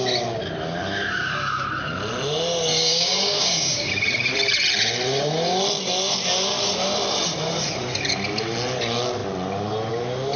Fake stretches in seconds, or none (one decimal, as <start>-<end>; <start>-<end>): 2.7-3.9